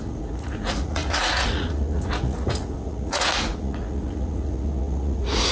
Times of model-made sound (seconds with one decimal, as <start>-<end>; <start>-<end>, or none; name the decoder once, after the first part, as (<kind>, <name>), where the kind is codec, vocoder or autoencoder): 0.0-5.5 (vocoder, Vocos)